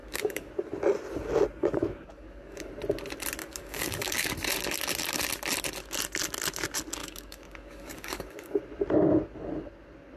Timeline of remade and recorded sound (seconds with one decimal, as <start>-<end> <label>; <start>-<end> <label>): 0.0-0.5 remade; 0.5-1.6 recorded; 1.6-2.7 remade; 2.7-3.4 recorded; 3.4-4.3 remade; 4.3-7.0 recorded; 7.0-8.6 remade; 8.6-10.2 recorded